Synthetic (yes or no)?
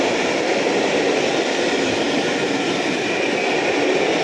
no